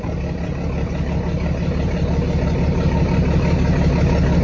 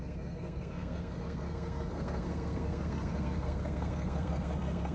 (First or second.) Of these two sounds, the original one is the first